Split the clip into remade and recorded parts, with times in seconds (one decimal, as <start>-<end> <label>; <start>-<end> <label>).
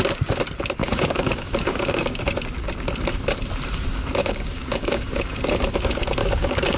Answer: 0.0-0.8 recorded; 0.8-2.2 remade; 2.2-4.2 recorded; 4.2-5.4 remade; 5.4-6.2 recorded; 6.2-6.8 remade